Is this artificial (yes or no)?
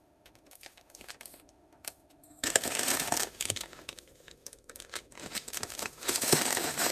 yes